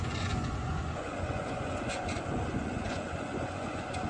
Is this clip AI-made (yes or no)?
yes